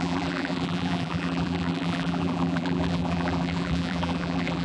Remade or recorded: remade